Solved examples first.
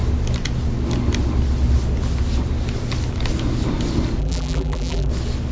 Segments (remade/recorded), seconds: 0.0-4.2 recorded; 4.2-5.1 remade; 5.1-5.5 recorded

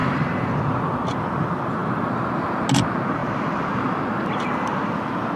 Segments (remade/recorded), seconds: 0.0-0.5 remade; 0.5-5.4 recorded

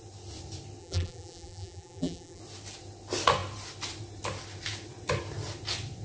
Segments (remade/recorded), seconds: 0.0-0.8 recorded; 0.8-2.4 remade; 2.4-6.0 recorded

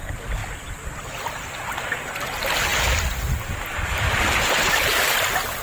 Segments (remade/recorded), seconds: 0.0-0.4 recorded; 0.4-2.1 remade; 2.1-5.6 recorded

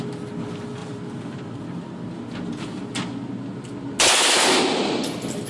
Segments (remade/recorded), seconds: 0.0-0.8 recorded; 0.8-1.5 remade; 1.5-5.5 recorded

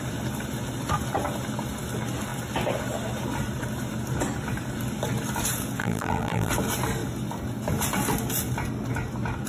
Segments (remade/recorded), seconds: 0.0-5.8 recorded; 5.8-6.5 remade; 6.5-9.5 recorded